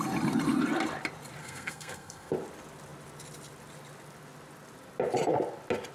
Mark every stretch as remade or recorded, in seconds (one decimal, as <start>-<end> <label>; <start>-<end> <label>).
0.0-1.4 recorded; 1.4-2.3 remade; 2.3-5.9 recorded